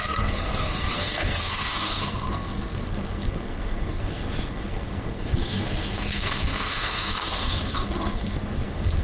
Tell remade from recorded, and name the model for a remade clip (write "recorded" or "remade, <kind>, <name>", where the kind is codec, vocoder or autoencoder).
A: remade, codec, SNAC